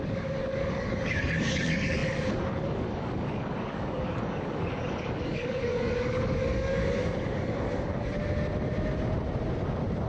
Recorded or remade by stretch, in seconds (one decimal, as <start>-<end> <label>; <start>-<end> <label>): 0.0-8.2 remade; 8.2-10.1 recorded